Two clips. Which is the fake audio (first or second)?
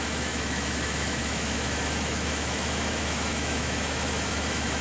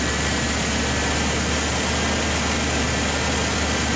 first